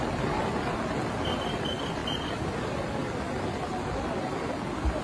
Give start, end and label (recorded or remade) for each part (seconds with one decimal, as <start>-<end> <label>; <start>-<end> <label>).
0.0-5.0 recorded